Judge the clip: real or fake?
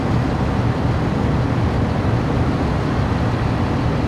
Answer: real